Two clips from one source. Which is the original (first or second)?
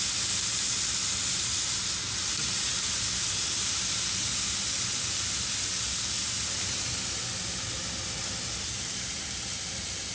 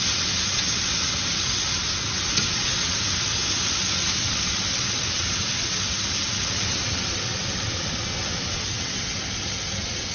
first